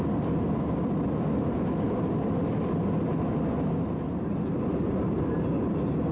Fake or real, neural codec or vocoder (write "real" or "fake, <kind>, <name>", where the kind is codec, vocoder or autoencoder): real